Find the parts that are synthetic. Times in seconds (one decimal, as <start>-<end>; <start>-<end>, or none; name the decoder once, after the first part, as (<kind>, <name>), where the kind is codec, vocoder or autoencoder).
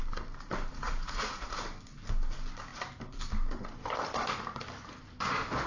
0.7-1.6 (vocoder, Vocos)